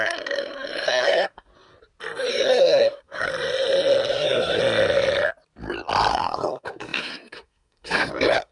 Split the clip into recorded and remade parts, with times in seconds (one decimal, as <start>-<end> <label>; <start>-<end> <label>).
0.0-1.5 remade; 1.5-2.3 recorded; 2.3-3.3 remade; 3.3-4.1 recorded; 4.1-4.6 remade; 4.6-6.1 recorded; 6.1-8.5 remade